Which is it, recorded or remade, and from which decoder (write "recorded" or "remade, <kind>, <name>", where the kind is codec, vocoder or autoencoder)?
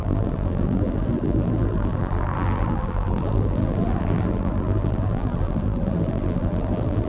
remade, vocoder, BigVGAN v2